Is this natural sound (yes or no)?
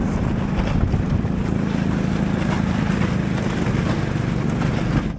yes